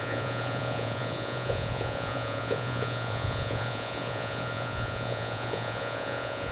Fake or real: fake